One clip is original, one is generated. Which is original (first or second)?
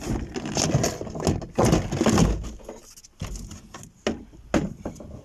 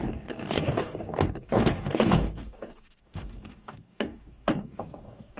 first